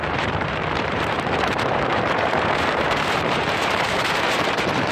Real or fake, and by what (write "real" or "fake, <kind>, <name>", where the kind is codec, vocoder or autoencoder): fake, vocoder, BigVGAN v2